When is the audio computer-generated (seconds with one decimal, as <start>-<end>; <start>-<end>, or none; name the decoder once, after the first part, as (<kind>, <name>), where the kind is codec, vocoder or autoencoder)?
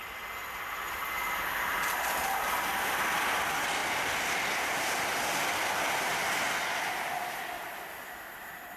3.8-5.5 (vocoder, BigVGAN v2); 7.6-8.8